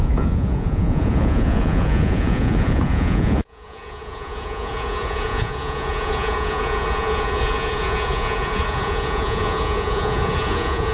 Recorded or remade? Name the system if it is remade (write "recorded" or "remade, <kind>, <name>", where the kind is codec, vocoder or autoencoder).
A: remade, vocoder, Vocos